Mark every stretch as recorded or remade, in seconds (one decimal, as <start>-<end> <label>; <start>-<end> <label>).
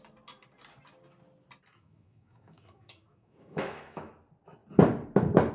0.0-1.7 recorded; 1.7-4.1 remade; 4.1-5.5 recorded